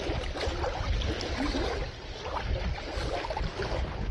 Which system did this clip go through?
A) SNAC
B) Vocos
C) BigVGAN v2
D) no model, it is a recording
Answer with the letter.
D